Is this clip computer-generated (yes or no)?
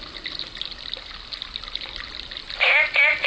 no